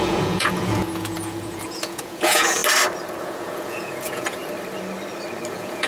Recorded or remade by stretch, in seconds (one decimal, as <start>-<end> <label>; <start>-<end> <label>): 0.0-2.6 remade; 2.6-3.2 recorded; 3.2-4.4 remade; 4.4-5.5 recorded; 5.5-5.9 remade